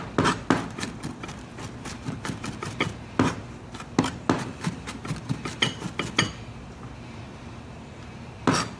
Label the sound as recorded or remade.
recorded